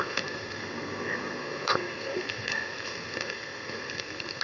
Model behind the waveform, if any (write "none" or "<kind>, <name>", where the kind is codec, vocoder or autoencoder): codec, SNAC